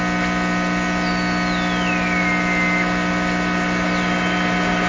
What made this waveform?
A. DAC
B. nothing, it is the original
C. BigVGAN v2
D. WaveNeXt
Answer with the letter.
B